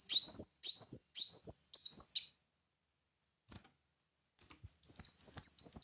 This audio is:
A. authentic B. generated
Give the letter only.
A